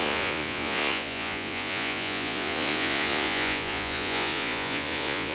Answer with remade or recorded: remade